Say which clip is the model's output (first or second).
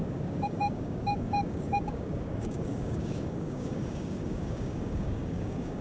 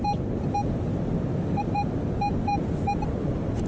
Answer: first